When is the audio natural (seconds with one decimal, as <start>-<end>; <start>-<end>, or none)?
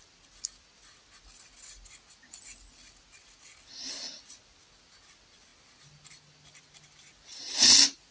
0.0-8.1